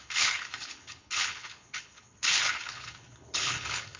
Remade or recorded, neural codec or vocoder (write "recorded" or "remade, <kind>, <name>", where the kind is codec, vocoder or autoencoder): remade, codec, HILCodec